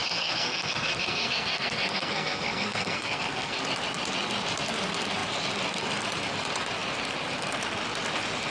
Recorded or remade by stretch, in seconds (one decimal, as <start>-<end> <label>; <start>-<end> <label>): 0.0-3.6 remade; 3.6-8.5 recorded